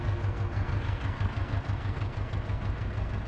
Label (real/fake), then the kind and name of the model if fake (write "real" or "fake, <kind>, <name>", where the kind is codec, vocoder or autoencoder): fake, codec, SNAC